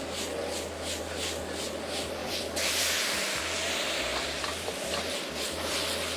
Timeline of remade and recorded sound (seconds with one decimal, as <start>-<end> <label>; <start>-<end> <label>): 0.0-2.2 recorded; 2.2-3.4 remade; 3.4-4.1 recorded; 4.1-4.8 remade; 4.8-6.2 recorded